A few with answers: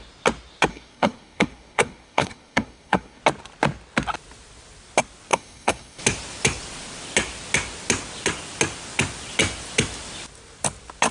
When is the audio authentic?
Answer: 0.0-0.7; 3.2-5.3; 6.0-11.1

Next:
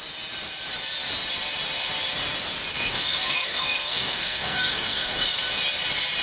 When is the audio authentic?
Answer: 0.0-2.7; 5.4-6.2

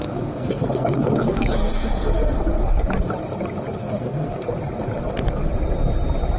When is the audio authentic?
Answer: 2.8-3.8; 4.4-6.4